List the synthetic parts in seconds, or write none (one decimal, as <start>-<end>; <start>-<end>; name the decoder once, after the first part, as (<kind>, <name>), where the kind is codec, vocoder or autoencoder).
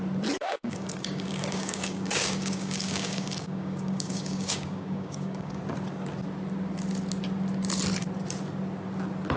0.4-5.6 (codec, DAC)